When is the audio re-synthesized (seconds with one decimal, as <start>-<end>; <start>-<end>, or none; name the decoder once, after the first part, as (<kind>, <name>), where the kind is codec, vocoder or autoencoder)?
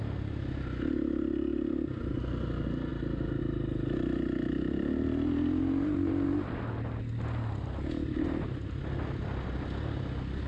1.5-2.1 (vocoder, BigVGAN v2)